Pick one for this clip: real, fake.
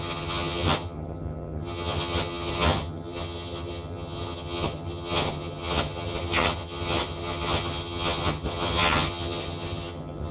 fake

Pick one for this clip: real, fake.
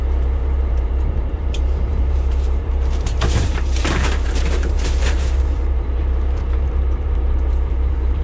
fake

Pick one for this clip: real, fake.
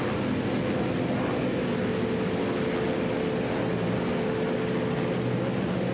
real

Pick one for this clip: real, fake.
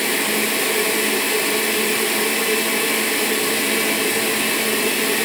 real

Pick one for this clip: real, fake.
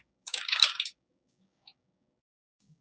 fake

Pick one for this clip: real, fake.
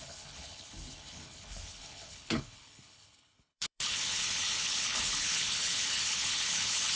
fake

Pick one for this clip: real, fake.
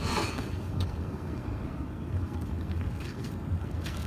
fake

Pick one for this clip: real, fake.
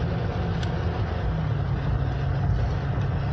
real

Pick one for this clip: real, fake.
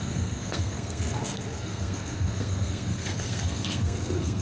fake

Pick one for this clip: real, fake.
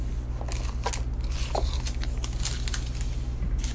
real